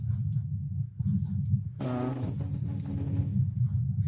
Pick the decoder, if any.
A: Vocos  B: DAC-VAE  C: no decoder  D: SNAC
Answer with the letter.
C